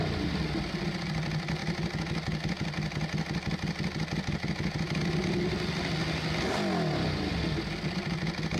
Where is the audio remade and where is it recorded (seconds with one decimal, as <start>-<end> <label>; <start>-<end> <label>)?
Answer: 0.0-8.6 recorded